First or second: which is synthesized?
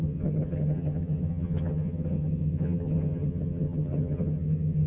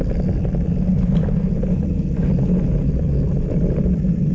first